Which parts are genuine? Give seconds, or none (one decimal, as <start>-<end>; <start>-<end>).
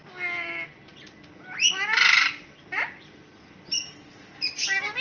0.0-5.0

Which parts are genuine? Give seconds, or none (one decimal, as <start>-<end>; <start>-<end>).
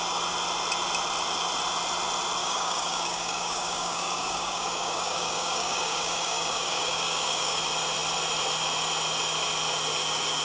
0.0-2.4; 7.6-10.4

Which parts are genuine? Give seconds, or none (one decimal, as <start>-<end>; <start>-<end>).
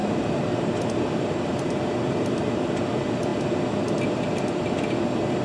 2.8-5.4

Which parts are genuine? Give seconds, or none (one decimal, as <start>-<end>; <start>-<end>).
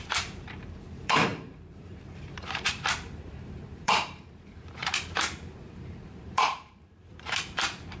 none